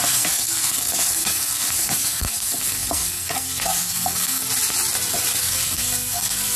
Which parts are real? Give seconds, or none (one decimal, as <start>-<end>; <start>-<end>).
4.4-5.4